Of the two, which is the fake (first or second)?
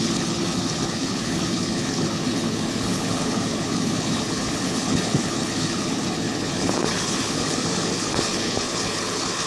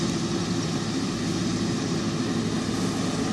first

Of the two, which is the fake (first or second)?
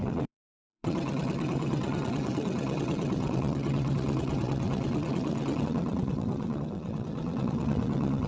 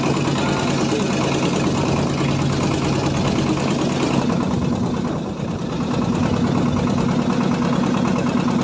first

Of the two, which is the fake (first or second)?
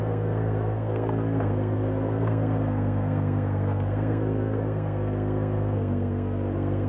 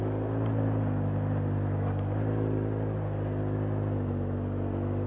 first